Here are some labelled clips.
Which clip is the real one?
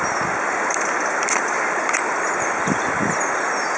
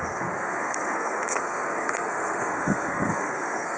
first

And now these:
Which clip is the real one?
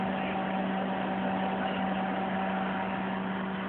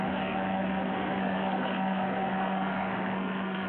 first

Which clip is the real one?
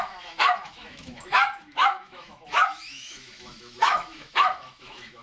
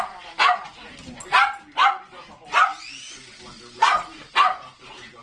second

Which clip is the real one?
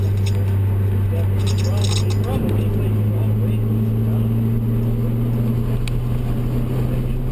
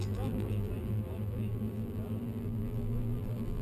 first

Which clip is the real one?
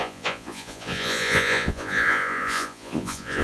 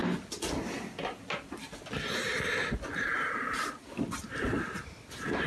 second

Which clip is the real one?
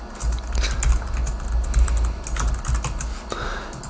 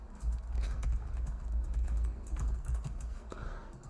first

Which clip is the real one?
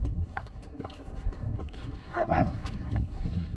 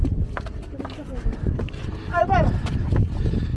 second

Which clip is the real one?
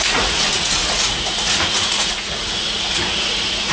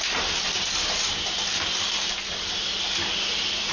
second